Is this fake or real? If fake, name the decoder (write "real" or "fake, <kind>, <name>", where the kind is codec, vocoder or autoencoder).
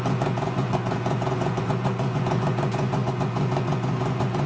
fake, vocoder, Vocos